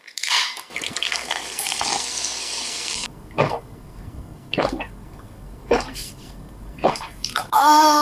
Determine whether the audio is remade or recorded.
remade